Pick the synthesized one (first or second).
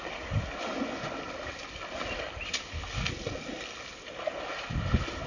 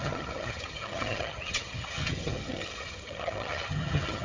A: second